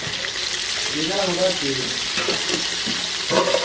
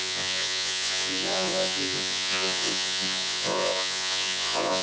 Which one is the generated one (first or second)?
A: second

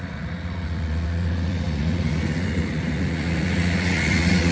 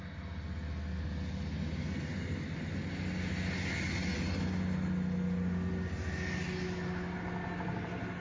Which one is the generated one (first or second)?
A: first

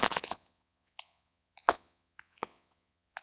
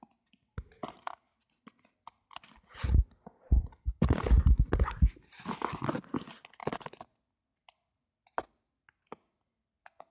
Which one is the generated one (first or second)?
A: first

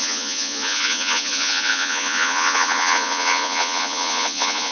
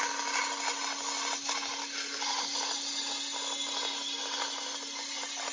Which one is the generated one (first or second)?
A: first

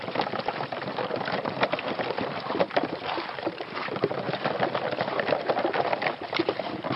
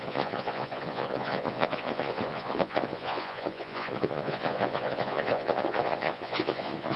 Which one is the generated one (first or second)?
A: second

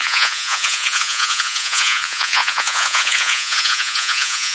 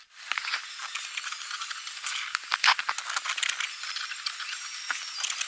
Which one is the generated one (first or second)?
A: first